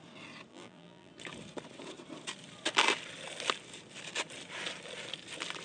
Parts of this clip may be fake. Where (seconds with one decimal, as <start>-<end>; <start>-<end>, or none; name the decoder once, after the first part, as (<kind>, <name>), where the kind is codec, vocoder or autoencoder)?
0.5-1.1 (vocoder, BigVGAN v2)